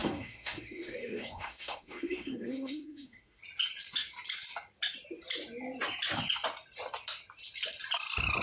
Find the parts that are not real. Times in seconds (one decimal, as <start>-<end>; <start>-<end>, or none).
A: 0.0-3.4